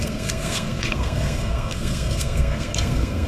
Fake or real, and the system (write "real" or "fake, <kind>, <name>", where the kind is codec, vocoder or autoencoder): fake, codec, SNAC